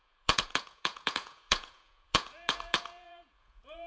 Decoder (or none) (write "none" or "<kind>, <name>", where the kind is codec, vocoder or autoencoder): vocoder, Vocos